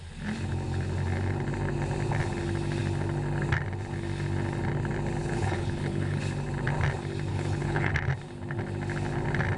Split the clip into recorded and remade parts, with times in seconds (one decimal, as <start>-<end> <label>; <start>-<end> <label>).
0.0-5.2 recorded; 5.2-6.2 remade; 6.2-7.3 recorded; 7.3-7.9 remade; 7.9-9.6 recorded